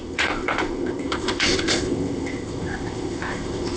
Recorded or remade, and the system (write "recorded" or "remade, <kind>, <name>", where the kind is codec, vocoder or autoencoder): remade, codec, ZipCodec